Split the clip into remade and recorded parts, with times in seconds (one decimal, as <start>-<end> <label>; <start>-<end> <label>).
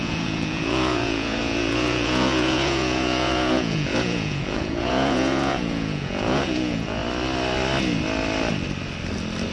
0.0-7.0 remade; 7.0-9.5 recorded